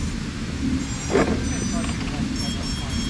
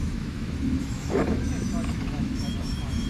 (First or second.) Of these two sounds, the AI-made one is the second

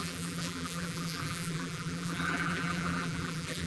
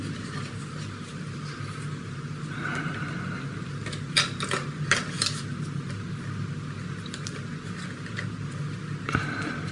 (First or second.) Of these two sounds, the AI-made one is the first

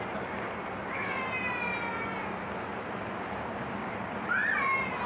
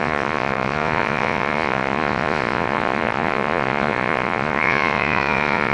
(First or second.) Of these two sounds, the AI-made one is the second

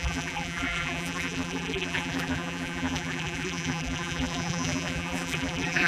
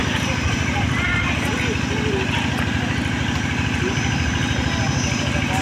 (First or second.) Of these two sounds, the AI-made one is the first